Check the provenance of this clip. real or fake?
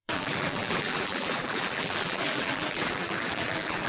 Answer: fake